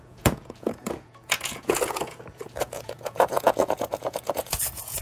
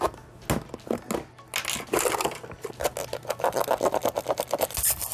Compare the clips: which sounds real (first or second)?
second